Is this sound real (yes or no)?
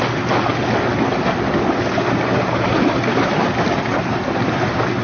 yes